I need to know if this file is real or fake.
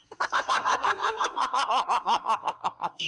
fake